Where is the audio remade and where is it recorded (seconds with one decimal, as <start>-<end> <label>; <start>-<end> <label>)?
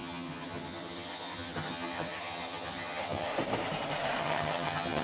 0.0-3.3 remade; 3.3-4.2 recorded; 4.2-5.0 remade